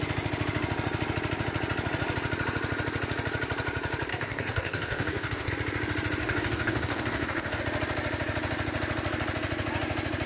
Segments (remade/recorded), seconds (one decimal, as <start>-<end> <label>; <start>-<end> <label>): 0.0-4.1 recorded; 4.1-5.5 remade; 5.5-6.2 recorded; 6.2-7.6 remade; 7.6-10.3 recorded